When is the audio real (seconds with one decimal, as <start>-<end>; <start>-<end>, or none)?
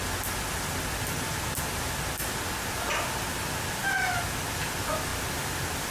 0.0-5.1